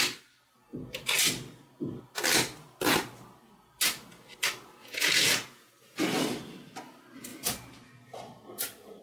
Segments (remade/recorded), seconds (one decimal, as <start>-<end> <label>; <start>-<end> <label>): 0.0-4.8 recorded; 4.8-5.7 remade; 5.7-9.0 recorded